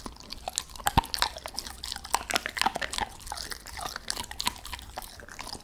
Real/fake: real